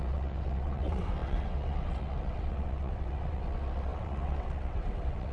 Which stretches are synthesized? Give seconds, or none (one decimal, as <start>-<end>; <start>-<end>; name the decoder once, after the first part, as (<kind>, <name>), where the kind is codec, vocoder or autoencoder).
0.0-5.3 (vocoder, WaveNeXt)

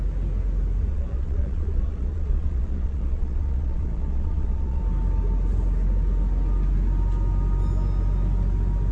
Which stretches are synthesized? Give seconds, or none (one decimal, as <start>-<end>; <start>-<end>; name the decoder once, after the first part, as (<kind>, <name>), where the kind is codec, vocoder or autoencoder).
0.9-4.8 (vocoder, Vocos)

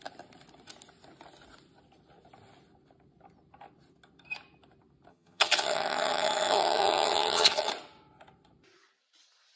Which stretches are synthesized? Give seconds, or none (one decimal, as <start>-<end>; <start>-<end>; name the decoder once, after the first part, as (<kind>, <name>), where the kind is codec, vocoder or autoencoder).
5.1-7.7 (vocoder, HiFi-GAN)

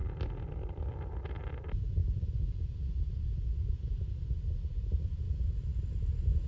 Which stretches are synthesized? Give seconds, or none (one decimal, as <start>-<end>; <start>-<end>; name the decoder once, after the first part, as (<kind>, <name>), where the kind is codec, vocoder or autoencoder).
none

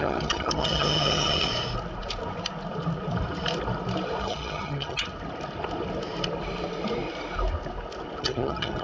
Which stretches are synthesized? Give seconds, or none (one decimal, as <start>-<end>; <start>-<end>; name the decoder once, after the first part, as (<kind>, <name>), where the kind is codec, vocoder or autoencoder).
0.0-1.5 (vocoder, HiFi-GAN); 4.2-5.1; 8.2-8.8

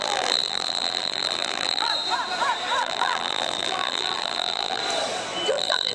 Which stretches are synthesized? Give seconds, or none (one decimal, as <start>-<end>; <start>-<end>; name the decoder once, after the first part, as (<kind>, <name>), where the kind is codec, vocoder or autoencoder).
0.0-1.9 (vocoder, BigVGAN v2); 2.8-4.8; 5.5-5.9

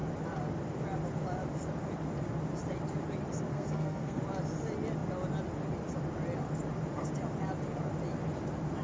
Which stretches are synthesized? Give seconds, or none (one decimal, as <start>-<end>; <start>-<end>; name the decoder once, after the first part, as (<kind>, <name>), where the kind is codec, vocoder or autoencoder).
3.5-4.2 (codec, SNAC)